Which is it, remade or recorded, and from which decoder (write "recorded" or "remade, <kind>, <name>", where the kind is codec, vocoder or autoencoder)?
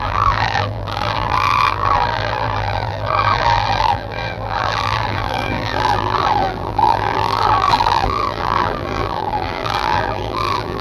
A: remade, vocoder, BigVGAN v2